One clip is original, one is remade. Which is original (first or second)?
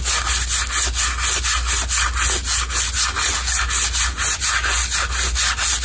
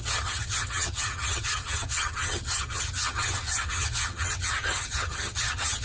first